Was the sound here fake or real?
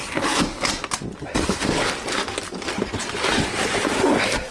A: real